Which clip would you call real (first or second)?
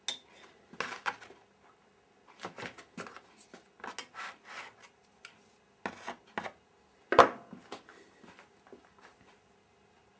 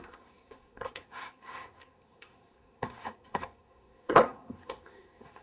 first